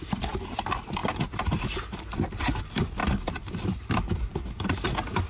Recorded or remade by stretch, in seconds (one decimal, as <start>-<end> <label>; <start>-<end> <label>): 0.0-5.3 recorded